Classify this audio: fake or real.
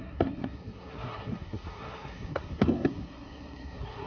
fake